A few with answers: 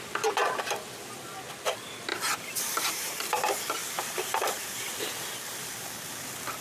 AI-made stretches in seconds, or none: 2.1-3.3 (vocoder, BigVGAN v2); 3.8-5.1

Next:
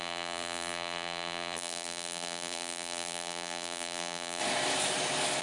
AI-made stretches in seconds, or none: 0.0-4.4 (vocoder, BigVGAN v2)

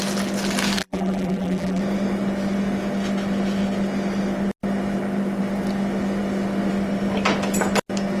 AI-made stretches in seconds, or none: 0.8-1.8 (vocoder, BigVGAN v2)

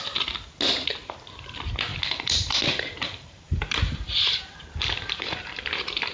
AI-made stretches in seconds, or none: 1.9-5.6 (vocoder, BigVGAN v2)

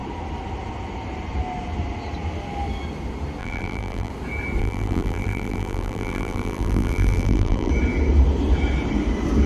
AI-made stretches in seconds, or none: 3.4-4.1 (vocoder, BigVGAN v2); 4.6-7.7

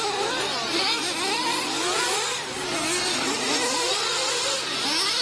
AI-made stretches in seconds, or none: 0.7-2.6 (vocoder, BigVGAN v2); 3.9-4.5